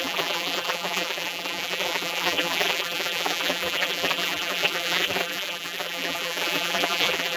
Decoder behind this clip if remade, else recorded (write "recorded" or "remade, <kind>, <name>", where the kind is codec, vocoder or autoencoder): remade, vocoder, BigVGAN v2